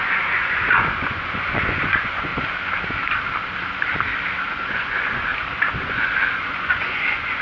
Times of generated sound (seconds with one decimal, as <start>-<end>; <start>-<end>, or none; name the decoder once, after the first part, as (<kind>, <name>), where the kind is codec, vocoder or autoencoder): 0.0-2.3 (vocoder, Vocos); 4.5-5.3; 5.8-7.4